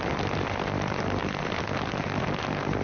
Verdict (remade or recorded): remade